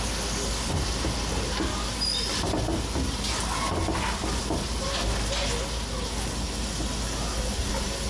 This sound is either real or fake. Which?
real